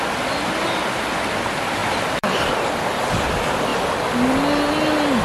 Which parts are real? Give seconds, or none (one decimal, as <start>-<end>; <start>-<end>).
0.0-1.8; 2.7-5.2